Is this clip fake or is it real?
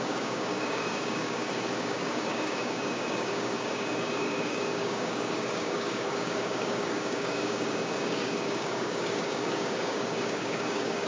fake